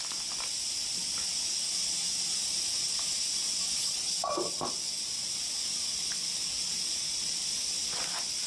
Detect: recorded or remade recorded